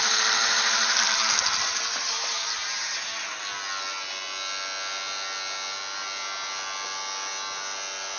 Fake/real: real